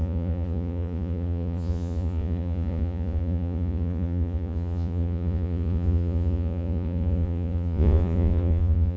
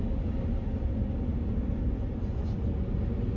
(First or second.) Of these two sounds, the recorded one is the second